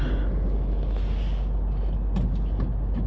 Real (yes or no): yes